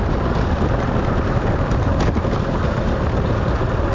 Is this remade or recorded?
recorded